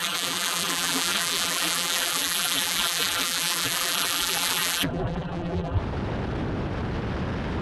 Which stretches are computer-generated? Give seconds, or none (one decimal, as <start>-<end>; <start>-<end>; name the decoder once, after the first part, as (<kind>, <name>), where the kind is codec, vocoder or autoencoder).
0.0-5.8 (vocoder, BigVGAN v2)